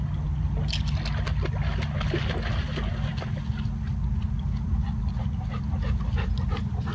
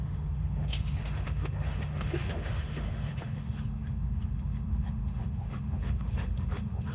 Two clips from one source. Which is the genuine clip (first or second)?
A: first